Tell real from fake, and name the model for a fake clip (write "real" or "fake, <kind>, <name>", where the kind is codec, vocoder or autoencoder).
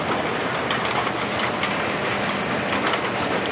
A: real